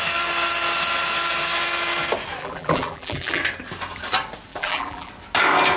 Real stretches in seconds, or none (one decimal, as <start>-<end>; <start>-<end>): 0.0-2.4; 3.4-4.5; 5.1-5.8